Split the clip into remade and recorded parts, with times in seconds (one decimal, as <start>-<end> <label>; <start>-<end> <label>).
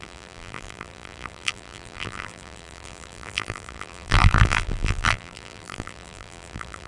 0.0-6.9 remade